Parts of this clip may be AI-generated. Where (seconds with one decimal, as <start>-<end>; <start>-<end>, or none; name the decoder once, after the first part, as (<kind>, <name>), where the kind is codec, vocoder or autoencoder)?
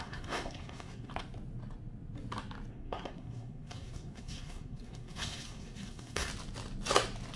0.0-1.1 (codec, SNAC); 2.7-6.3